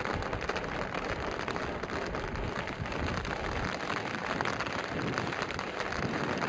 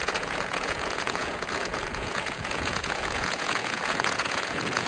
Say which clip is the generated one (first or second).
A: second